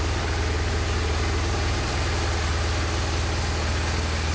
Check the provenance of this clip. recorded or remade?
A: recorded